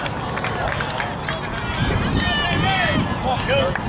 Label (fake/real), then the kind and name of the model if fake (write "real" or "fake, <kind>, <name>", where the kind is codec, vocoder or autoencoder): real